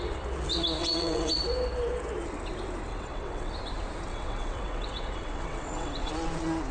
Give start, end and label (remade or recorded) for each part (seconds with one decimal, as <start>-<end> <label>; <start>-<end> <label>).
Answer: 0.0-0.8 recorded; 0.8-1.3 remade; 1.3-2.9 recorded; 2.9-3.5 remade; 3.5-4.1 recorded; 4.1-6.1 remade; 6.1-6.7 recorded